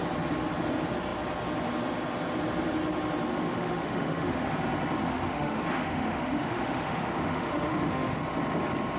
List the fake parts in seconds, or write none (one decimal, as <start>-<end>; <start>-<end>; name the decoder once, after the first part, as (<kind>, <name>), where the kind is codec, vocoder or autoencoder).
3.3-4.5 (autoencoder, DAC-VAE); 5.0-8.2